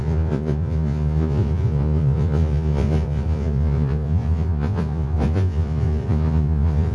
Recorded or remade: remade